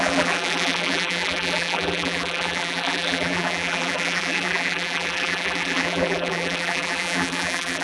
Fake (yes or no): yes